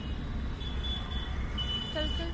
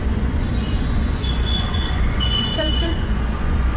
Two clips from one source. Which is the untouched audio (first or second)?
first